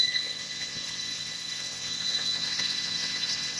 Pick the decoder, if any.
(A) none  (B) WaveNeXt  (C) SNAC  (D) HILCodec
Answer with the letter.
B